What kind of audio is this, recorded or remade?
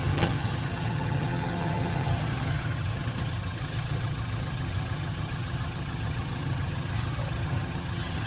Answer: remade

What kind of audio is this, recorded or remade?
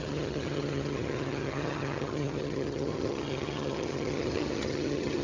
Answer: remade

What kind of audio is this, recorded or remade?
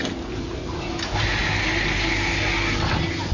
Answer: recorded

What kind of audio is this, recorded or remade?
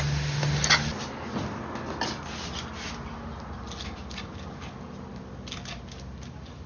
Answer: recorded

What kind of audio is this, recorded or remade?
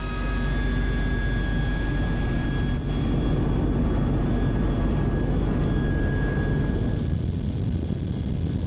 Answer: recorded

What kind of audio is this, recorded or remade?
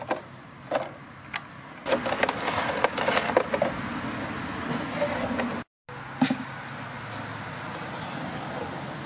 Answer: recorded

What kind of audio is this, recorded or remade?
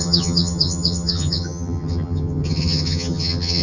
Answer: remade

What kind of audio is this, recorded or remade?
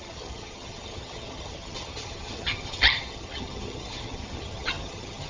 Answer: remade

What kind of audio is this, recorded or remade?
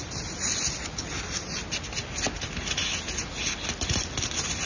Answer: recorded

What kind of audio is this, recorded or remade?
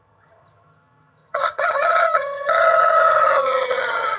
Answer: remade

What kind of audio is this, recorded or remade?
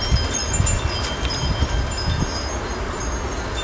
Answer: recorded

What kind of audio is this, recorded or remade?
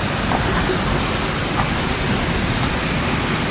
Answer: recorded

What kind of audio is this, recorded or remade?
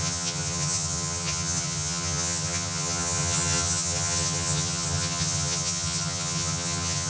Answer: remade